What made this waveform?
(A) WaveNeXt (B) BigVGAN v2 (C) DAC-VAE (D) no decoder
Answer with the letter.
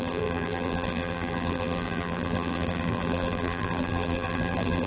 B